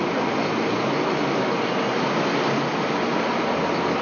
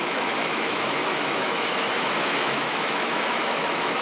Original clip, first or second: first